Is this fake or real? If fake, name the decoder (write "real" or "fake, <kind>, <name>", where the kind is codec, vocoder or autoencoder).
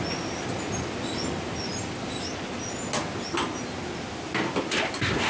real